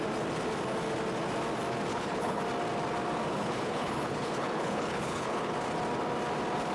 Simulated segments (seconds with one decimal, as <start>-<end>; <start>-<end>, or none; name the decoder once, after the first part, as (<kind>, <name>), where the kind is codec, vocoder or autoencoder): 1.9-2.4 (codec, HILCodec); 3.3-5.5